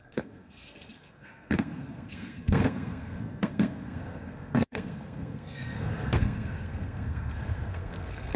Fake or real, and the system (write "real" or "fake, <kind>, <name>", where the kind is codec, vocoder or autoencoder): fake, codec, SNAC